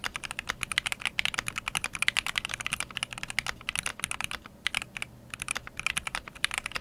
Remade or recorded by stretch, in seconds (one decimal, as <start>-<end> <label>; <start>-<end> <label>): 0.0-6.8 recorded